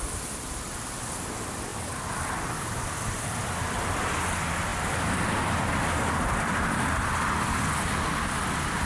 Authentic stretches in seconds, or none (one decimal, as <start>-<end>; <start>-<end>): 0.0-8.9